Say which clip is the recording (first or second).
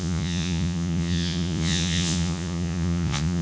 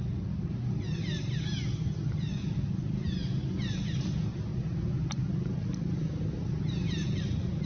second